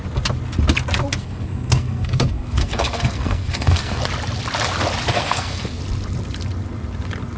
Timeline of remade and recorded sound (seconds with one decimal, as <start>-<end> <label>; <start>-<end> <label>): 0.0-1.2 recorded; 1.2-4.0 remade; 4.0-5.1 recorded; 5.1-5.8 remade; 5.8-7.4 recorded